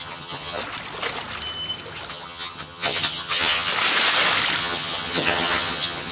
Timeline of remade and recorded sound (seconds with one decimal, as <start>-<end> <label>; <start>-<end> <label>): 0.0-0.6 remade; 0.6-2.1 recorded; 2.1-3.7 remade; 3.7-4.6 recorded; 4.6-6.1 remade